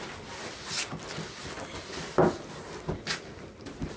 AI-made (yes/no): no